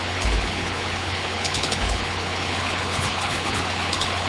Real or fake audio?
fake